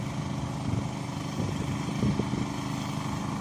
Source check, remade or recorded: recorded